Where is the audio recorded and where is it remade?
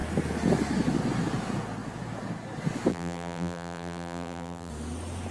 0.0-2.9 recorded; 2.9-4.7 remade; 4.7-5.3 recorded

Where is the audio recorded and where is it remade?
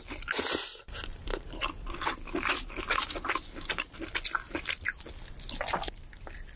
0.0-6.6 remade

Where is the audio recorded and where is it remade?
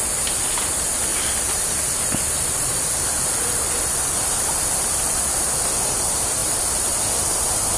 0.0-1.1 recorded; 1.1-5.2 remade; 5.2-6.4 recorded; 6.4-7.8 remade